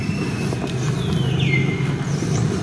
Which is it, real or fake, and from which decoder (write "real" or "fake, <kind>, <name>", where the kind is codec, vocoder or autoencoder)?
real